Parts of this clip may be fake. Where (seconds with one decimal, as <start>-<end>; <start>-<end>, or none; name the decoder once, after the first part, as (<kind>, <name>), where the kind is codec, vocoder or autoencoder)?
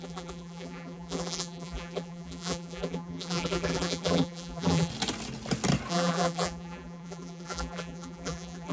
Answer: 0.0-4.9 (vocoder, BigVGAN v2); 5.9-8.7